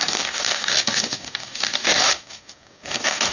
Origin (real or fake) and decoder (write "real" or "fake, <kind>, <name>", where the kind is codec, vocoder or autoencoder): fake, codec, DAC